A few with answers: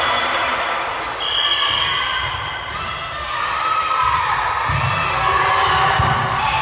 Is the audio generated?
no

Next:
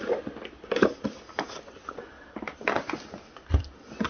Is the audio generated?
no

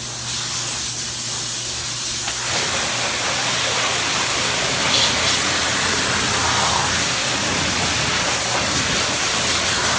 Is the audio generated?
no